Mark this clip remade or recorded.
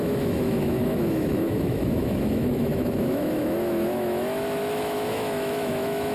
remade